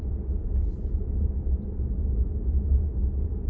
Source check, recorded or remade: recorded